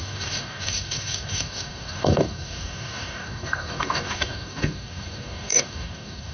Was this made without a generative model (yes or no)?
no